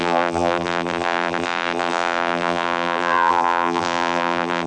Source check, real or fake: fake